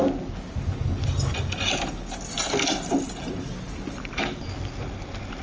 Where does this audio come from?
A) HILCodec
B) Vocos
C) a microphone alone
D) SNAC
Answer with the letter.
C